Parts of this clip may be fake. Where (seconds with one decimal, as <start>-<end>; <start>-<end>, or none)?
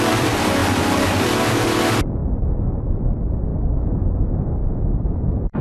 0.0-2.2; 2.8-3.5; 4.1-5.6